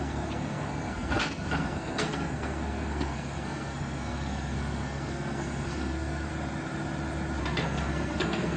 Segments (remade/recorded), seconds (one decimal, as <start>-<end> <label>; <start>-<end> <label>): 0.0-6.3 remade; 6.3-7.4 recorded; 7.4-8.6 remade